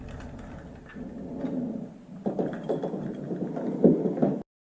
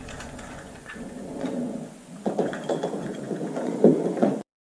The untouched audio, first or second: first